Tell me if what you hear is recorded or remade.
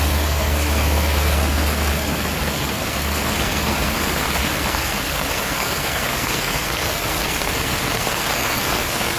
remade